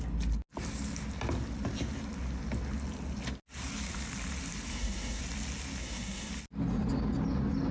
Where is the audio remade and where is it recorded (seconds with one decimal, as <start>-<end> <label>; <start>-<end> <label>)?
0.0-4.7 recorded; 4.7-5.2 remade; 5.2-5.8 recorded; 5.8-6.3 remade; 6.3-7.7 recorded